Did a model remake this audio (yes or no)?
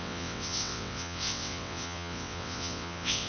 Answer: yes